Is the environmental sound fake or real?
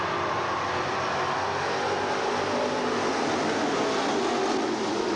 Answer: real